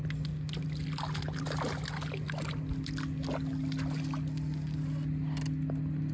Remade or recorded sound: recorded